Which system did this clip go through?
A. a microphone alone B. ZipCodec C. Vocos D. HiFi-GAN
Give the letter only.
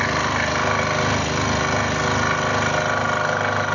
A